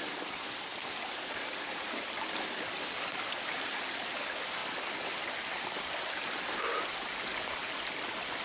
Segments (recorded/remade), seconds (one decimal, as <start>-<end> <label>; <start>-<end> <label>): 0.0-8.4 recorded